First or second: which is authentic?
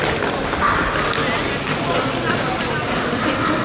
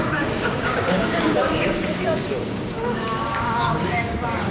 first